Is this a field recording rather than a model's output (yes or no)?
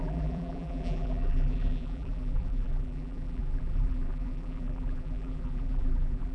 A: no